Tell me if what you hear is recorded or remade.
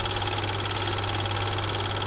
recorded